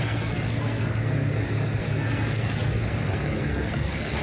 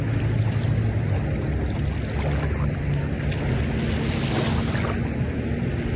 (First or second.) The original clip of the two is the second